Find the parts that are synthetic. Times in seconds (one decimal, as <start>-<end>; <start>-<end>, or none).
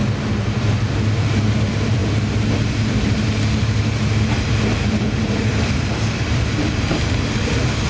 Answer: 0.6-2.0; 5.6-7.9